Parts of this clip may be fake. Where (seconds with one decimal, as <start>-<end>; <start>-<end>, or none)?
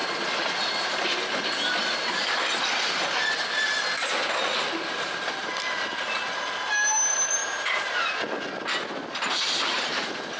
none